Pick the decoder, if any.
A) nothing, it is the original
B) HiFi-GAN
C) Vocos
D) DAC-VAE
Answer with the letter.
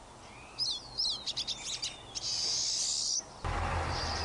A